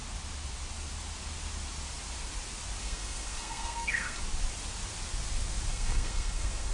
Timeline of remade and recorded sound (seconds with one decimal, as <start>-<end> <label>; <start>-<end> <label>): 0.0-2.8 recorded; 2.8-4.2 remade; 4.2-5.7 recorded; 5.7-6.7 remade